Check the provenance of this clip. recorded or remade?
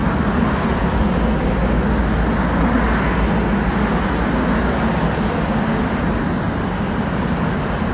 recorded